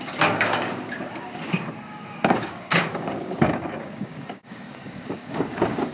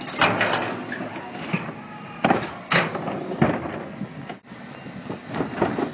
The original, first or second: second